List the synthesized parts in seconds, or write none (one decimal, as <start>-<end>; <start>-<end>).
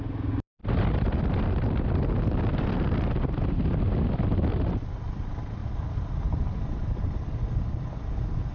none